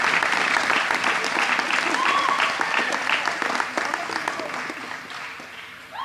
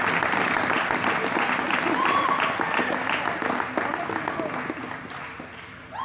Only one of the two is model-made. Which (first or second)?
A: first